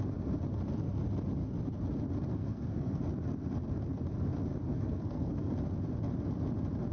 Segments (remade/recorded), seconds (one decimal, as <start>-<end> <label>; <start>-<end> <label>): 0.0-2.3 recorded; 2.3-3.0 remade; 3.0-4.7 recorded; 4.7-5.5 remade; 5.5-6.9 recorded